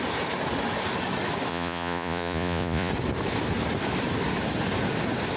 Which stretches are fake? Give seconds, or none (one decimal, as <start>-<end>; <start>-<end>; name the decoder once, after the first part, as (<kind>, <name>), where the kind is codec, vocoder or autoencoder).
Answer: 1.5-2.9 (vocoder, Vocos)